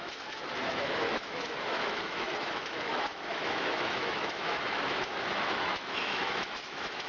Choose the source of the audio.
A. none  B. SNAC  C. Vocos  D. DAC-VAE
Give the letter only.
D